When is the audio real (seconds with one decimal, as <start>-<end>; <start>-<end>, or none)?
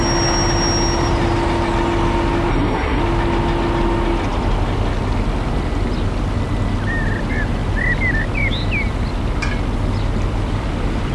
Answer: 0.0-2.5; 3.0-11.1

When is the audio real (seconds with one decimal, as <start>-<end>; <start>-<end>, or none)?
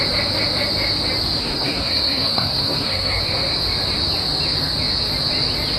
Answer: 0.0-1.4; 3.2-5.8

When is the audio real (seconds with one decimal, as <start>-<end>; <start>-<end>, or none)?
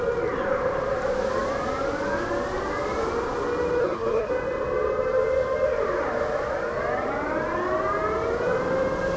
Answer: 0.0-3.8; 4.3-9.2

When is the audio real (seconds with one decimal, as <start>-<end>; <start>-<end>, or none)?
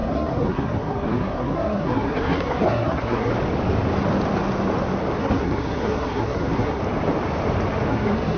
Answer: 3.3-5.2; 6.8-7.9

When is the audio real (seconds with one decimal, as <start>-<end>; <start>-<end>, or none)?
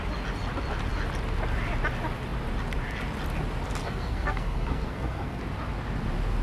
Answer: 0.0-3.8; 5.4-6.4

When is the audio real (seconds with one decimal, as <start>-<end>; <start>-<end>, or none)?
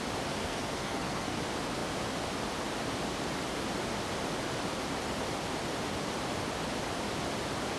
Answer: 0.0-0.4; 1.4-7.8